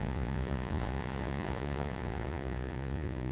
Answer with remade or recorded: remade